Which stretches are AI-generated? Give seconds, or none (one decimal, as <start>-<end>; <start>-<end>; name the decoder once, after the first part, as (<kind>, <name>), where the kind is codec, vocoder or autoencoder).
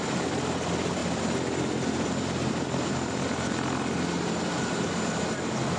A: none